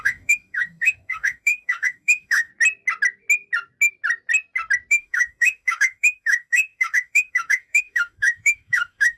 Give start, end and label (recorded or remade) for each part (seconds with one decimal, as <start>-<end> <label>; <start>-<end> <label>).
0.0-2.5 remade; 2.5-4.9 recorded; 4.9-9.2 remade